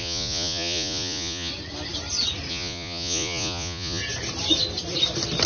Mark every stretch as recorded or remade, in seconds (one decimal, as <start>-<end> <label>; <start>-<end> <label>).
0.0-1.5 remade; 1.5-2.5 recorded; 2.5-4.0 remade; 4.0-5.5 recorded